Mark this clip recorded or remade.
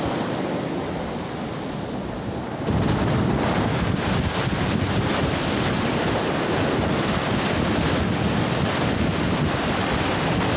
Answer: recorded